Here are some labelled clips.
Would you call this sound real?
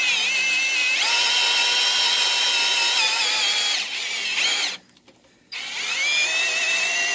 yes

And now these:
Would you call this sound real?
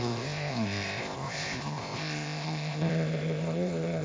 no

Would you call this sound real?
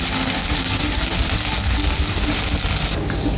yes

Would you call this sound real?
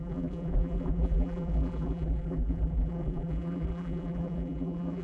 no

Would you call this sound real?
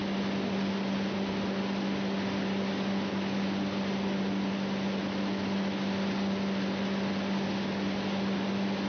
yes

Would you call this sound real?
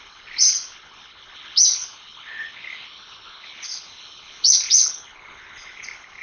no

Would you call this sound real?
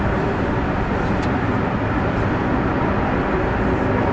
yes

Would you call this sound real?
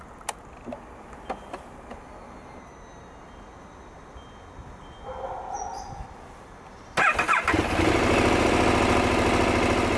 yes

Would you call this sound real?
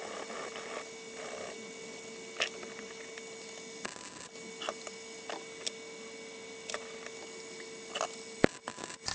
yes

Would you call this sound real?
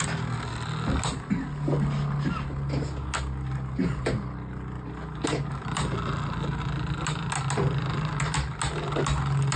yes